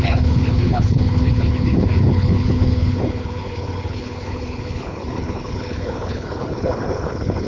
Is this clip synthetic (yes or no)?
yes